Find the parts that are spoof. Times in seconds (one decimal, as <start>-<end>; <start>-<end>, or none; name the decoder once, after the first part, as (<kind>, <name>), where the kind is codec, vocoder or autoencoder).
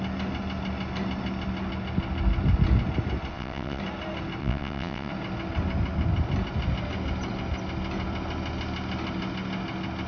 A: 3.3-3.8 (vocoder, WaveNeXt); 4.4-5.1